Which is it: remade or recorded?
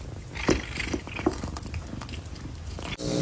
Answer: recorded